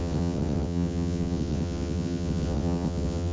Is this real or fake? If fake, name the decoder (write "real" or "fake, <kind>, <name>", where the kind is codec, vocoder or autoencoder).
fake, vocoder, WaveNeXt